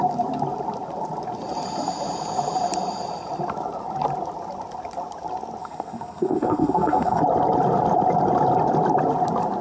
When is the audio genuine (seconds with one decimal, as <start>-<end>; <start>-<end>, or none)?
0.0-5.6; 7.2-9.6